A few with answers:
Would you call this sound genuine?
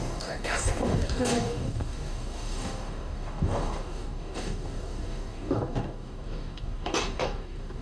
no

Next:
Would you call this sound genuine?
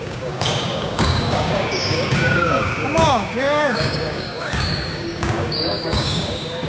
no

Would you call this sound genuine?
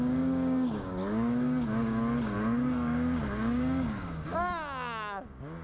no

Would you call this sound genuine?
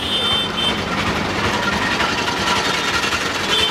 yes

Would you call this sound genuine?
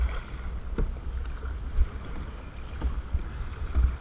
yes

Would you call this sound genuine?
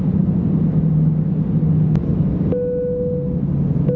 yes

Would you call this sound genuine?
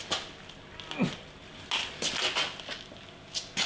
yes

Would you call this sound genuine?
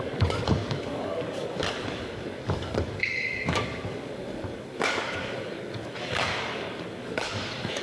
no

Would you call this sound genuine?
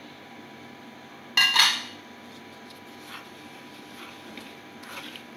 yes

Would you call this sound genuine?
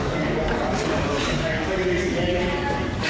no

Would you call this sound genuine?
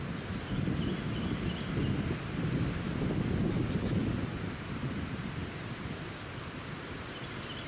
yes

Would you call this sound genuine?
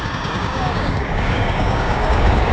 no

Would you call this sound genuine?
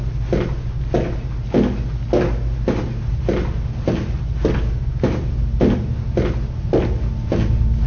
yes